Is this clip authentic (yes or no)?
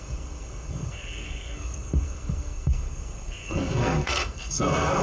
no